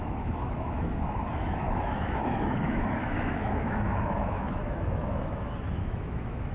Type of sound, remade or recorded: remade